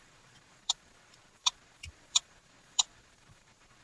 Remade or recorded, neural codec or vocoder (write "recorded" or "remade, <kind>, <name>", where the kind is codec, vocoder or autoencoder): remade, vocoder, Vocos